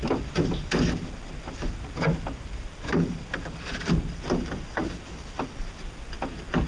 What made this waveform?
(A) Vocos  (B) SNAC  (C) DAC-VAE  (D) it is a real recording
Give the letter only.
D